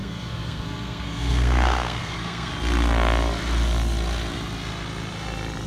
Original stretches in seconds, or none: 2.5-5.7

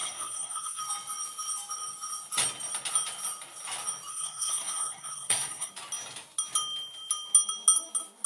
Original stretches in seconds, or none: 0.8-4.1; 5.7-8.3